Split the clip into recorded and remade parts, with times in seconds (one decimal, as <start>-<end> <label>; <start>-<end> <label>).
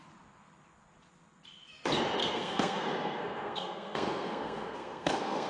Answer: 0.0-2.2 recorded; 2.2-5.5 remade